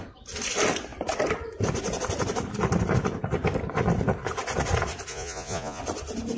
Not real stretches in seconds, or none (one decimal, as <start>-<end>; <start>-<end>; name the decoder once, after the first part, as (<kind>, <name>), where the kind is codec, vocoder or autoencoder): 5.1-5.8 (vocoder, Vocos)